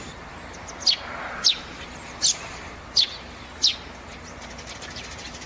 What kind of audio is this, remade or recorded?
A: recorded